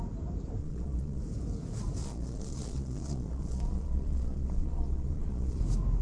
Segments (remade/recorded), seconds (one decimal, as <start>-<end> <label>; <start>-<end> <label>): 0.0-0.6 recorded; 0.6-1.2 remade; 1.2-2.0 recorded; 2.0-5.6 remade; 5.6-6.0 recorded

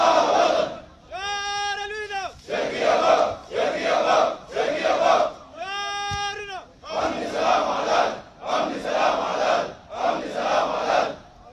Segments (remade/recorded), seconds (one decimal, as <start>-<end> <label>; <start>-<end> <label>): 0.0-11.5 recorded

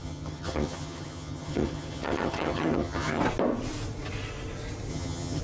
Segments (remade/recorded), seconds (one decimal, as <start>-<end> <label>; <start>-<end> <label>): 0.0-3.2 remade; 3.2-4.9 recorded; 4.9-5.4 remade